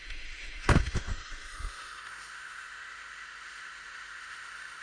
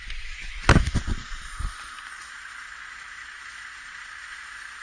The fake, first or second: first